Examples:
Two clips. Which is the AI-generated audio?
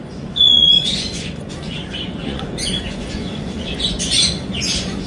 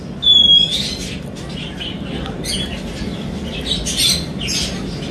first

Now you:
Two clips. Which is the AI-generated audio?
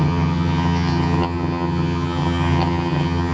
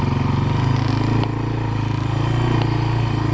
first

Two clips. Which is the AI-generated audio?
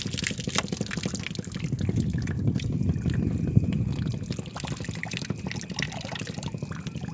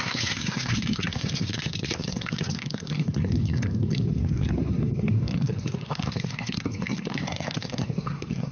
second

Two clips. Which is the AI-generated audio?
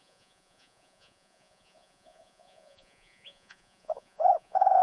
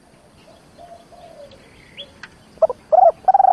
first